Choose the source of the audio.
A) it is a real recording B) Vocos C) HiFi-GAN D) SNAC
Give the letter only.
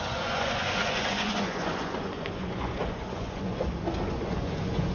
B